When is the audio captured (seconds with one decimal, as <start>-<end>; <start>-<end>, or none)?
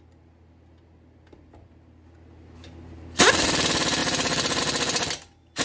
0.0-5.6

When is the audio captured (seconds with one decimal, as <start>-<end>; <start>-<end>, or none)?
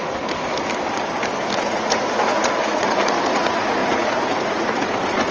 0.5-1.6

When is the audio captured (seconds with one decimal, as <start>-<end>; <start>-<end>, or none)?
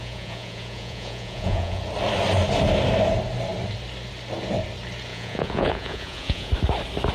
1.8-5.1; 6.5-7.1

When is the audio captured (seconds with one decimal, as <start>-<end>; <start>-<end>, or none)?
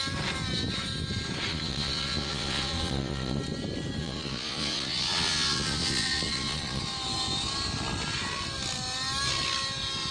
0.0-1.5; 3.4-4.0; 6.8-10.1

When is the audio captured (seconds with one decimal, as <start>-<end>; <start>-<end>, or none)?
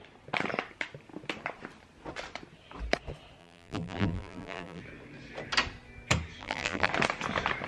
0.0-3.4; 4.8-6.4; 6.9-7.7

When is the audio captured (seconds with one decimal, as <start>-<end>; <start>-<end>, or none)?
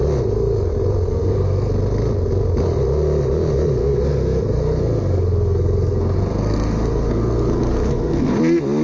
0.0-1.1; 1.7-3.8; 8.4-8.8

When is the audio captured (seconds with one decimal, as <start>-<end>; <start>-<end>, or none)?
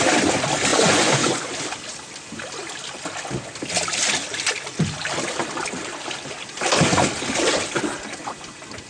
0.0-0.7; 1.5-8.9